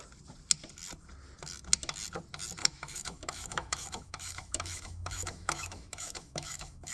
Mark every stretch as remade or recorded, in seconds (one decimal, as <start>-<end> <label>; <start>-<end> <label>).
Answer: 0.0-2.6 recorded; 2.6-6.9 remade